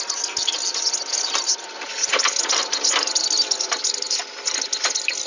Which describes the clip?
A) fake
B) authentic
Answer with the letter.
B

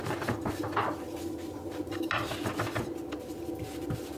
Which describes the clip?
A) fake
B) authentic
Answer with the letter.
B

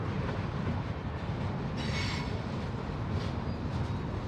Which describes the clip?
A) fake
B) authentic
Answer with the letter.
B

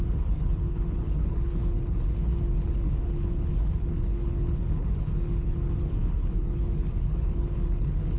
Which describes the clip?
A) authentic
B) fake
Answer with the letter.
B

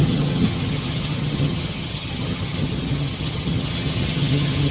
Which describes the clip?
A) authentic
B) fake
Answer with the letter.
B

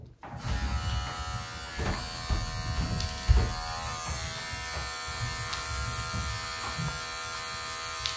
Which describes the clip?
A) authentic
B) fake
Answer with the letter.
A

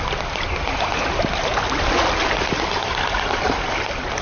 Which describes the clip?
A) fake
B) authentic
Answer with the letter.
B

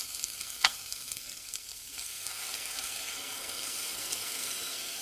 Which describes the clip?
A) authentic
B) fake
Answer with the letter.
B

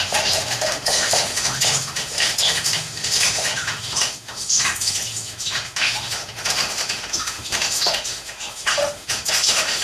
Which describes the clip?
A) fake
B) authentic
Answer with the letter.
A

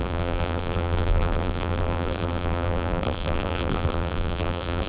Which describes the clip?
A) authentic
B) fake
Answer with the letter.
B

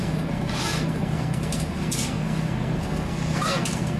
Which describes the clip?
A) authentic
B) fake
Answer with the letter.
B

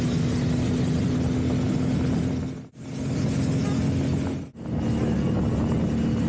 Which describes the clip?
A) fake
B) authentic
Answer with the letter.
B